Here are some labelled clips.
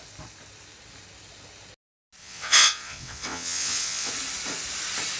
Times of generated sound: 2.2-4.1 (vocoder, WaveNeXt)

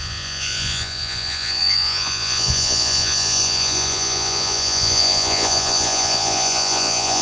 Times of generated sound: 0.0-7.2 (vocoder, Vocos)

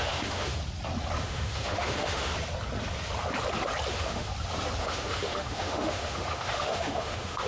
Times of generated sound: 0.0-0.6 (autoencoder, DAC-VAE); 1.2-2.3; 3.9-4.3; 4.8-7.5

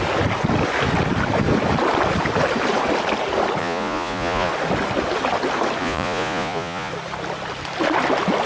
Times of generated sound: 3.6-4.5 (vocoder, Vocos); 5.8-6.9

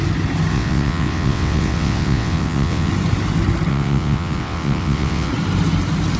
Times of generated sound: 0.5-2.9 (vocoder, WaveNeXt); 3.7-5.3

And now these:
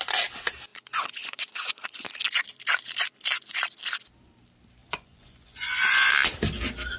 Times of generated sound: 0.7-2.1 (vocoder, Vocos); 4.8-6.1